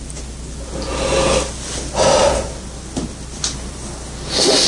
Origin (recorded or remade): recorded